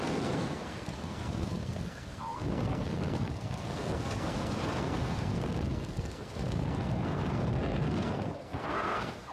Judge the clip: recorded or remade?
remade